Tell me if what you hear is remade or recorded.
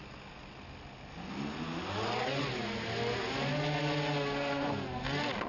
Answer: recorded